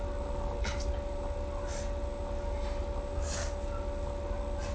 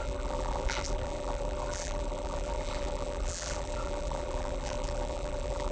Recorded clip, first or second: first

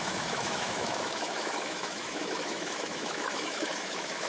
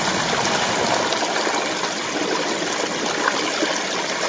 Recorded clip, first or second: second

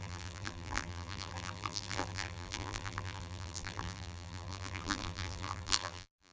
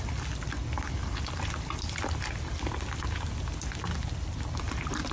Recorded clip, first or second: second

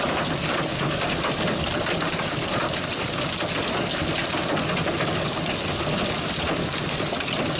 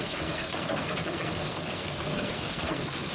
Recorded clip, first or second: first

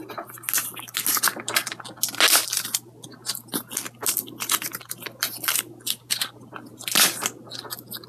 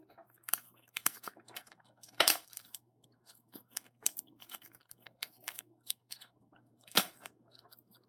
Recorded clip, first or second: first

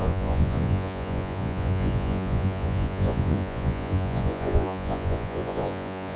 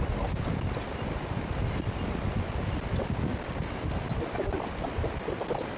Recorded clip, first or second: second